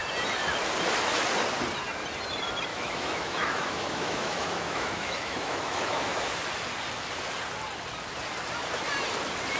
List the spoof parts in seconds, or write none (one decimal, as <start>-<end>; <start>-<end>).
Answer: 2.7-6.4